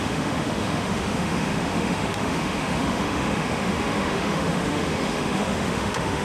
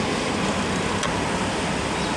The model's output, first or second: first